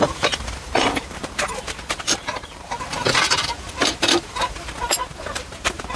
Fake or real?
fake